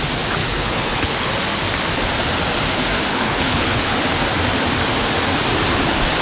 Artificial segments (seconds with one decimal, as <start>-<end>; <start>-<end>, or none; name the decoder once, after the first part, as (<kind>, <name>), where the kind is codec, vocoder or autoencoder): 0.4-1.3 (codec, HILCodec); 3.1-3.9